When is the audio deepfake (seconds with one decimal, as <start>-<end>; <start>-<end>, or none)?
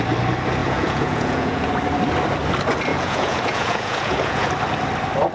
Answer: 0.6-1.7; 2.9-4.5